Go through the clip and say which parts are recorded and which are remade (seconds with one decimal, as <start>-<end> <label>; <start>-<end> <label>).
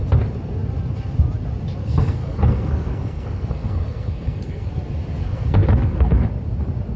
0.0-1.8 recorded; 1.8-4.7 remade; 4.7-5.2 recorded; 5.2-6.3 remade; 6.3-7.0 recorded